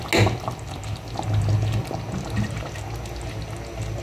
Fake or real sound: real